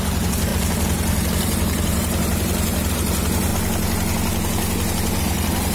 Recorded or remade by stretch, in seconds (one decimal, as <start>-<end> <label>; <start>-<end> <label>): 0.0-3.5 remade; 3.5-5.2 recorded; 5.2-5.7 remade